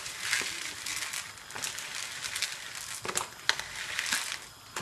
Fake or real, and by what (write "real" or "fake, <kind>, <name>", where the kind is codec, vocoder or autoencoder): real